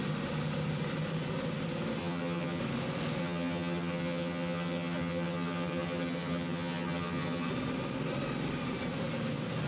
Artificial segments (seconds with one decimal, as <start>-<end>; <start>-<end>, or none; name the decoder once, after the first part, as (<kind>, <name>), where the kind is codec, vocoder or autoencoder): 2.0-2.6 (vocoder, HiFi-GAN); 3.2-7.5